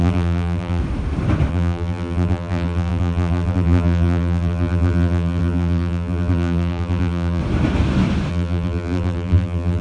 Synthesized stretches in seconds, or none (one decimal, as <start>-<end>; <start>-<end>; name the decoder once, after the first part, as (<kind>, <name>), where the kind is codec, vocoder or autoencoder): 0.0-0.8 (vocoder, BigVGAN v2); 1.5-7.4; 8.3-9.8